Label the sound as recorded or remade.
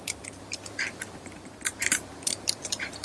remade